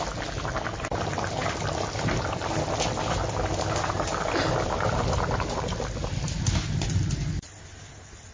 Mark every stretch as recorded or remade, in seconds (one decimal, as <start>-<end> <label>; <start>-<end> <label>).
0.0-8.3 recorded